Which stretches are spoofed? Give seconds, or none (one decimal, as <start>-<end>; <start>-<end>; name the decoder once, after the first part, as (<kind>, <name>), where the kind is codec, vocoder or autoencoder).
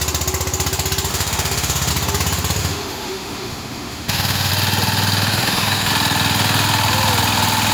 1.1-1.9 (autoencoder, DAC-VAE); 2.6-4.5; 5.3-5.9